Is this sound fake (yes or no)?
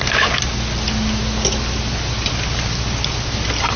no